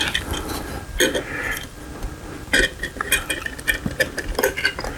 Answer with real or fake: real